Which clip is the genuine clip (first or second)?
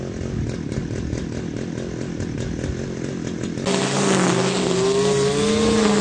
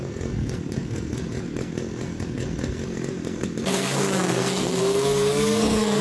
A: first